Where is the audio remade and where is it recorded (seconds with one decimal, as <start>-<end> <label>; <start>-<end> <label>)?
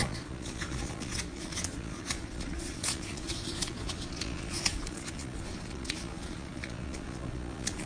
0.0-7.9 remade